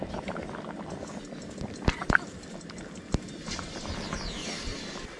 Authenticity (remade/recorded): recorded